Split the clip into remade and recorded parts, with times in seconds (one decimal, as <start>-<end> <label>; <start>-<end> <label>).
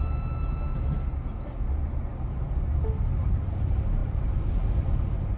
0.0-4.0 recorded; 4.0-5.4 remade